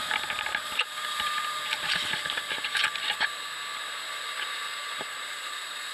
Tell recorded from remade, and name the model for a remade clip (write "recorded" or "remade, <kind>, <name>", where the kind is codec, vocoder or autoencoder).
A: recorded